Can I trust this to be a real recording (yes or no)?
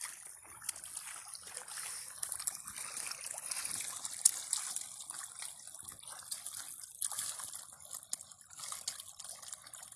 yes